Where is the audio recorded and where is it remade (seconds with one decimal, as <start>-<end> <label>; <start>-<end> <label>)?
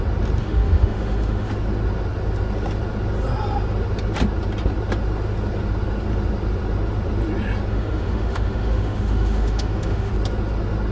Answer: 0.0-0.4 recorded; 0.4-1.5 remade; 1.5-7.7 recorded; 7.7-10.1 remade; 10.1-10.9 recorded